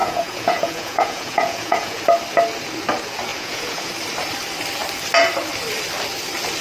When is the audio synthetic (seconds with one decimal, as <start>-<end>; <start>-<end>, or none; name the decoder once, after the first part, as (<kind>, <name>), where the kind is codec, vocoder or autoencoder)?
0.0-2.0 (vocoder, Vocos); 3.3-3.9